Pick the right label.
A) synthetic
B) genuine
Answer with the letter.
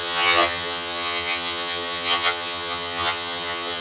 A